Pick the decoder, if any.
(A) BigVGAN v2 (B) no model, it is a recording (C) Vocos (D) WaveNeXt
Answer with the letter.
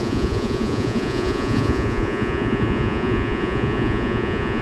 C